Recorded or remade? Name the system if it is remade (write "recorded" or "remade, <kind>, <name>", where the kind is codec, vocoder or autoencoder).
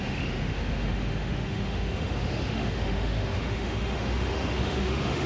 remade, autoencoder, DAC-VAE